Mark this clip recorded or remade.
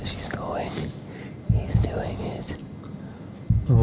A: recorded